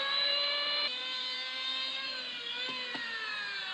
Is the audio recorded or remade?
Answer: remade